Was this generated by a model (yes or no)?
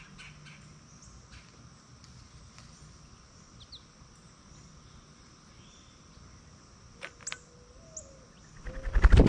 no